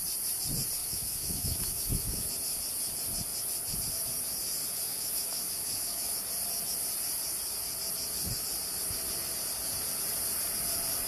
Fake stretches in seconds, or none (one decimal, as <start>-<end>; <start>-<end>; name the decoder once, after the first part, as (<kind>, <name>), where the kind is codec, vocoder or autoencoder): 0.8-2.3 (autoencoder, DAC-VAE); 4.9-6.2